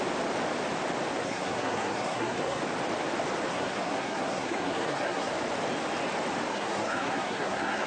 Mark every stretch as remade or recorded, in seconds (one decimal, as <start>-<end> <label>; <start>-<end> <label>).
0.0-1.2 recorded; 1.2-2.6 remade; 2.6-3.5 recorded; 3.5-5.3 remade; 5.3-6.5 recorded; 6.5-7.9 remade